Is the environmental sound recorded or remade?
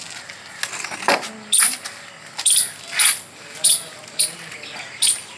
recorded